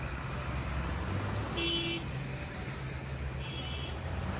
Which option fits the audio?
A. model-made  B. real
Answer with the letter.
B